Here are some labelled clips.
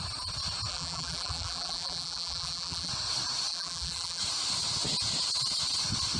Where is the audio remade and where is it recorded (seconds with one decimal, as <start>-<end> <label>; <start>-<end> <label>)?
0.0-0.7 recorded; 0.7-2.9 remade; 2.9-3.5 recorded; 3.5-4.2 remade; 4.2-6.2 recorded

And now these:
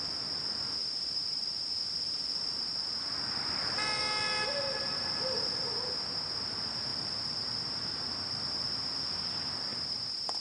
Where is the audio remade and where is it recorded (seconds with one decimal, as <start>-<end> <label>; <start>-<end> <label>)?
0.0-0.8 recorded; 0.8-4.5 remade; 4.5-6.9 recorded; 6.9-8.2 remade; 8.2-9.7 recorded; 9.7-10.4 remade

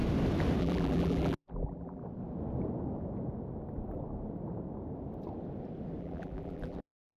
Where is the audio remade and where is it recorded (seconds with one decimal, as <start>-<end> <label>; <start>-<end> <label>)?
0.0-0.6 recorded; 0.6-2.0 remade; 2.0-6.0 recorded; 6.0-7.2 remade